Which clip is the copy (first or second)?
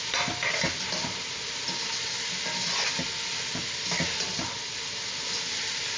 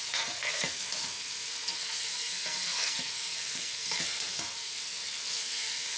second